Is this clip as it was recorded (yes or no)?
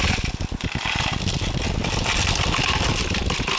yes